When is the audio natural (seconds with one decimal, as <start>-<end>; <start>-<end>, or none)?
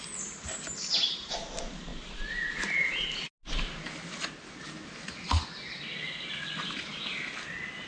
0.0-7.9